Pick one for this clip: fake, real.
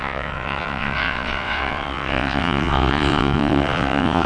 fake